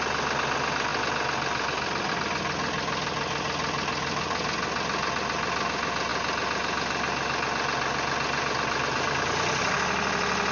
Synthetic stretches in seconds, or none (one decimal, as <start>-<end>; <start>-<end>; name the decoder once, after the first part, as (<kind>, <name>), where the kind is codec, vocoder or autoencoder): none